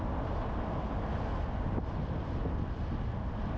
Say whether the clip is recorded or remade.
recorded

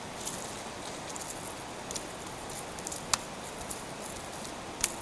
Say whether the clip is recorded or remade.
recorded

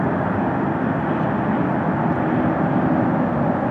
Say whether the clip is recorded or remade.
recorded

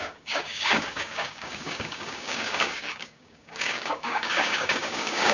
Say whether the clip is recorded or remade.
remade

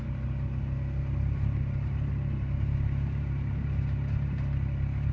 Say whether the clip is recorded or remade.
recorded